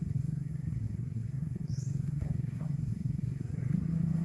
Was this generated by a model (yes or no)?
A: yes